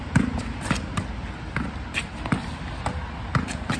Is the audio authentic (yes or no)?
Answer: yes